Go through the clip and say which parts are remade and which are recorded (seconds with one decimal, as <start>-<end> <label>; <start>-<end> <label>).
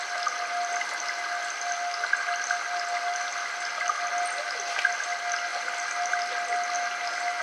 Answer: 0.0-7.4 recorded